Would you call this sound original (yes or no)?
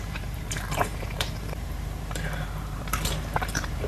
no